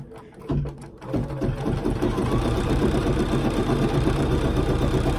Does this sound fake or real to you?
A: real